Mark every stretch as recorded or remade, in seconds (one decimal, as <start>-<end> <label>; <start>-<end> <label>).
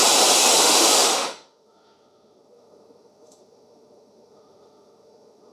0.0-0.6 recorded; 0.6-5.5 remade